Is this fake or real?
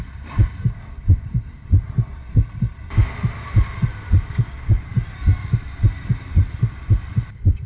real